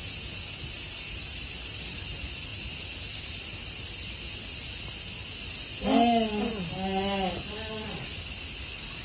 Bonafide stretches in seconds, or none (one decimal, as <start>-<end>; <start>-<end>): 0.0-0.9; 2.5-3.1; 4.4-7.5